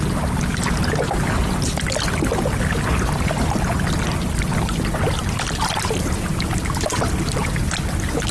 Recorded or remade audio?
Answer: recorded